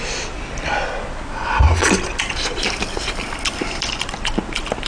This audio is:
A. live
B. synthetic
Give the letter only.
A